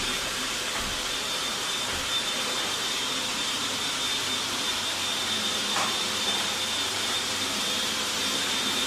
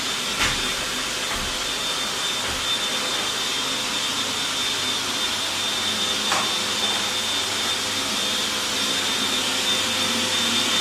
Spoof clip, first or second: first